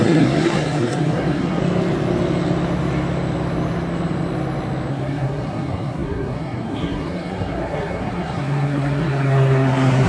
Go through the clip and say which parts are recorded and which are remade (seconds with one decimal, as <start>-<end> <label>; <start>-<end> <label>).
0.0-1.6 remade; 1.6-4.9 recorded; 4.9-10.1 remade